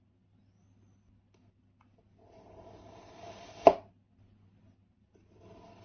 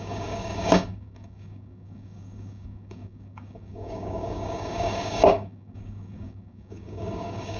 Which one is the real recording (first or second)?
first